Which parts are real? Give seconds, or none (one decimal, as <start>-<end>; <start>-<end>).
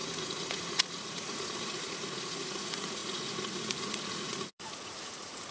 none